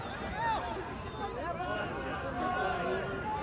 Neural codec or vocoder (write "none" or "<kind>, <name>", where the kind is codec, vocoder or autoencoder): none